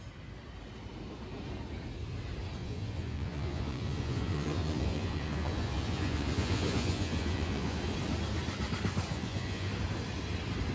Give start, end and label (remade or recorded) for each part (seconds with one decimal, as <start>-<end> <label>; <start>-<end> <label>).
0.0-2.6 recorded; 2.6-7.8 remade; 7.8-9.1 recorded; 9.1-9.7 remade; 9.7-10.7 recorded